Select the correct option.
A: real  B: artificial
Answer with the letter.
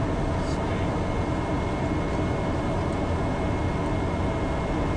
A